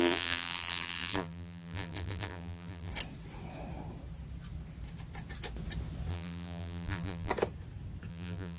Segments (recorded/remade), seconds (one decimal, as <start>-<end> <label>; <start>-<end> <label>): 0.0-2.9 remade; 2.9-6.1 recorded; 6.1-7.3 remade; 7.3-8.1 recorded; 8.1-8.6 remade